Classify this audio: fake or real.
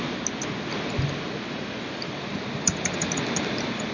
real